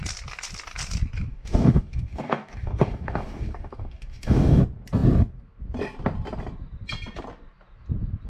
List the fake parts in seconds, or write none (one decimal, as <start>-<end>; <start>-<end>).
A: 1.3-4.6